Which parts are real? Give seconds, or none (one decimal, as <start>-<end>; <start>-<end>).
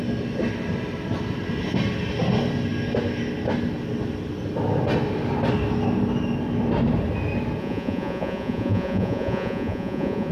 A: 0.0-7.6